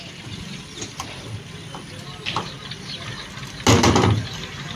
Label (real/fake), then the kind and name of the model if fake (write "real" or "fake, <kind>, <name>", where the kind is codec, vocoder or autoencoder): real